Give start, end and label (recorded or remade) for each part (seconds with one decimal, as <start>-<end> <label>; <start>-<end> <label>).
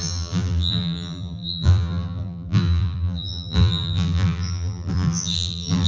0.0-5.9 remade